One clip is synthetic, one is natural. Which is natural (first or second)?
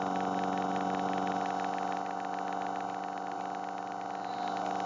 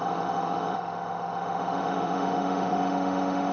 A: first